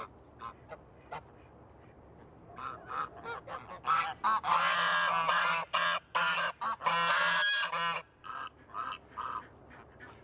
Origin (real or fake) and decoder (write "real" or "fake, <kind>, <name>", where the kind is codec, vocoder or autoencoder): real